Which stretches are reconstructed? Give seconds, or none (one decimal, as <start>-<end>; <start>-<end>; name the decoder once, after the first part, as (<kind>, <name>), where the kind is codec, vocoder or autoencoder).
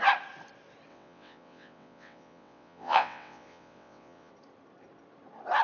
0.9-4.3 (vocoder, WaveNeXt)